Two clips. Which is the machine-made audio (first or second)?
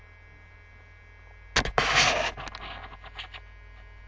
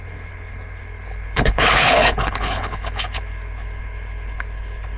second